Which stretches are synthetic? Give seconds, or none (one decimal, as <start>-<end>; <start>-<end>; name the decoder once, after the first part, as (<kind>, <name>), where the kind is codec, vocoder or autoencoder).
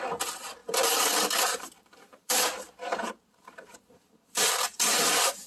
0.6-3.9 (vocoder, BigVGAN v2)